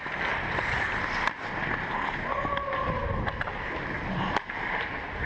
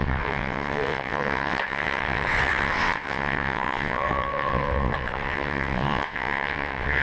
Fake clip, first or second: second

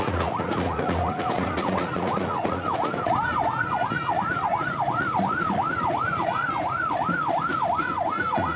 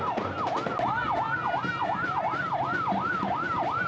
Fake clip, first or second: first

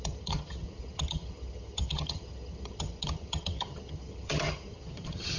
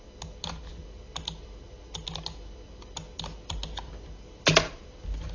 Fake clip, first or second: first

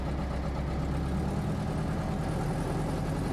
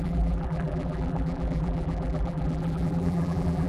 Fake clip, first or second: second